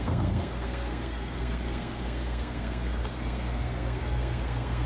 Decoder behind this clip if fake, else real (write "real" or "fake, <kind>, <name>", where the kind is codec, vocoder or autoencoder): fake, codec, SNAC